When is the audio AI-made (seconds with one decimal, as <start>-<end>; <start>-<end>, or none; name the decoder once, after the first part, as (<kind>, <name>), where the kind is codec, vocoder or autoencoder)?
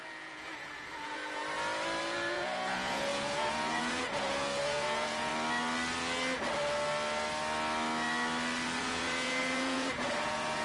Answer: 0.0-1.4 (vocoder, Vocos); 2.0-5.3; 8.8-10.6